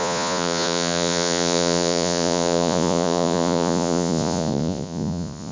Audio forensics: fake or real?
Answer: fake